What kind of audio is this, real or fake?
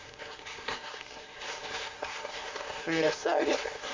fake